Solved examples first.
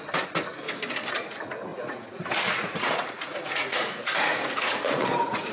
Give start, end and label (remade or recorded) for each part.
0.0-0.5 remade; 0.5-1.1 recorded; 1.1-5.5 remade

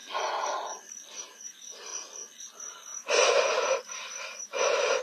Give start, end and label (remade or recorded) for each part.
0.0-1.1 recorded; 1.1-1.9 remade; 1.9-2.4 recorded; 2.4-5.0 remade

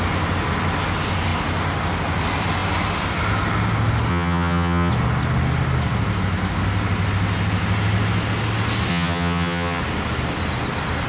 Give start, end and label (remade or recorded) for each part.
0.0-4.1 recorded; 4.1-4.9 remade; 4.9-8.9 recorded; 8.9-9.8 remade; 9.8-11.1 recorded

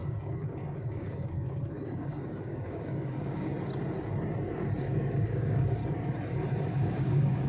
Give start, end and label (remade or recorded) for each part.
0.0-3.5 remade; 3.5-4.8 recorded; 4.8-5.8 remade; 5.8-6.7 recorded; 6.7-7.5 remade

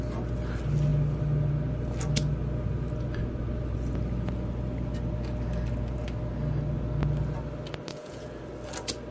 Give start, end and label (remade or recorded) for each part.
0.0-7.9 recorded; 7.9-8.4 remade; 8.4-9.1 recorded

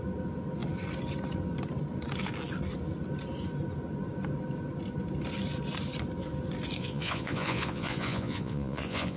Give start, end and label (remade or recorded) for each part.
0.0-6.8 recorded; 6.8-9.2 remade

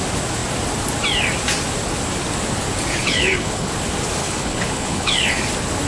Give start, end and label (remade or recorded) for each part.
0.0-3.0 recorded; 3.0-3.7 remade; 3.7-4.2 recorded; 4.2-5.4 remade; 5.4-5.9 recorded

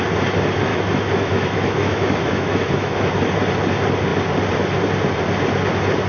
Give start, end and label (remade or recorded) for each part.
0.0-0.7 recorded; 0.7-3.2 remade; 3.2-6.1 recorded